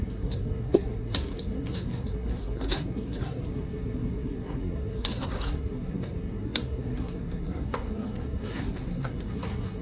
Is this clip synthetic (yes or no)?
yes